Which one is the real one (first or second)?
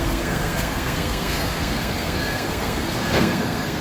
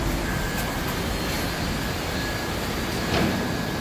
second